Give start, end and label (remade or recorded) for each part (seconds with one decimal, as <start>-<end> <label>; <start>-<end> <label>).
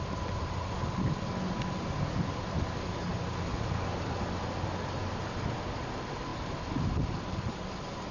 0.0-8.1 recorded